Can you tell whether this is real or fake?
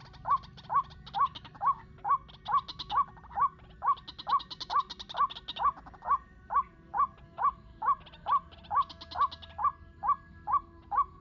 real